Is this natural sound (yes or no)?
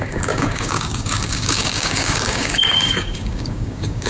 no